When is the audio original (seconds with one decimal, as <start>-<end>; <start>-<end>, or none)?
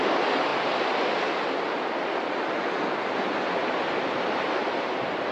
0.5-1.2